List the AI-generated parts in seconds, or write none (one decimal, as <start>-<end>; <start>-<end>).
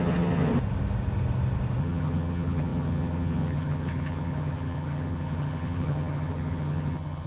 0.0-0.5; 1.8-7.3